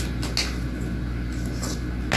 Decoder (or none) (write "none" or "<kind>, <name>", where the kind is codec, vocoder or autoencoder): none